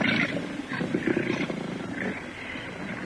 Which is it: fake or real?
real